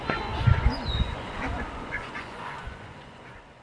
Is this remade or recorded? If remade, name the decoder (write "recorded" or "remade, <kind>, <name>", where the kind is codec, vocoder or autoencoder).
remade, vocoder, Vocos